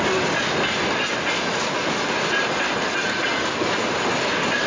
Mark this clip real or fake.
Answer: real